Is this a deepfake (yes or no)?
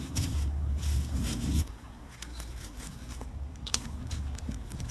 yes